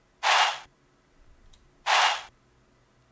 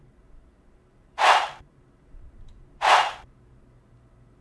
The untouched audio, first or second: first